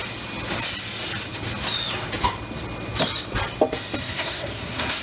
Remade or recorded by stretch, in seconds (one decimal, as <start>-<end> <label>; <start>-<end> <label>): 0.0-4.0 recorded; 4.0-5.0 remade

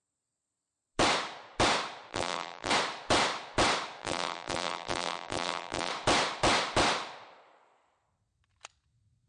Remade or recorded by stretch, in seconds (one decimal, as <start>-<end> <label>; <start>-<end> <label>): 0.0-2.1 recorded; 2.1-2.7 remade; 2.7-4.0 recorded; 4.0-5.9 remade; 5.9-9.3 recorded

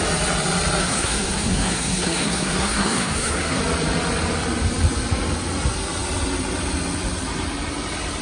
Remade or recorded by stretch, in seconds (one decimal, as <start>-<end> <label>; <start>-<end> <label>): 0.0-0.8 recorded; 0.8-3.6 remade; 3.6-8.2 recorded

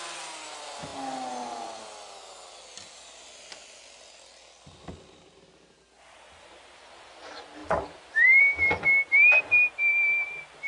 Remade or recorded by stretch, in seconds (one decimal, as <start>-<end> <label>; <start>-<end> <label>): 0.0-7.6 recorded; 7.6-8.4 remade; 8.4-10.7 recorded

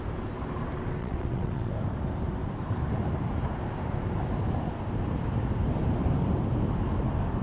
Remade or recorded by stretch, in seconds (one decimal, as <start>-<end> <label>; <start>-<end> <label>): 0.0-1.0 recorded; 1.0-1.7 remade; 1.7-7.4 recorded